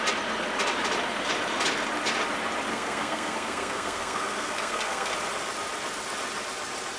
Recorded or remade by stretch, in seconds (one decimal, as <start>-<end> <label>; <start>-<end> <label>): 0.0-2.7 recorded; 2.7-5.1 remade; 5.1-7.0 recorded